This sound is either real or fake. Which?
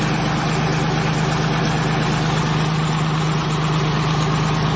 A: real